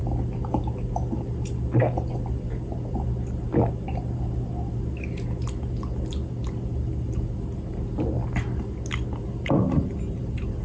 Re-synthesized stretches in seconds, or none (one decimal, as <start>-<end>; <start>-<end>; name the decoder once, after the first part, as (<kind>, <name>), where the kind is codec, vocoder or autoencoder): none